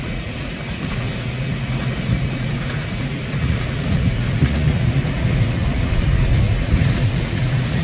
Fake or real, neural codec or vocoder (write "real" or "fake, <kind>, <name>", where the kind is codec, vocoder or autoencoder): fake, vocoder, Vocos